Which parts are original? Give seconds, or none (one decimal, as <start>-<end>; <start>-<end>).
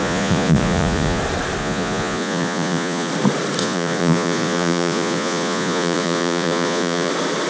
1.2-1.6; 3.1-3.6; 7.1-7.5